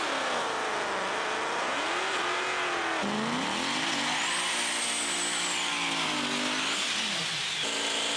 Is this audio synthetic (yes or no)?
no